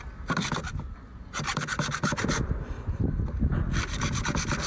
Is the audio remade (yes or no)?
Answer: no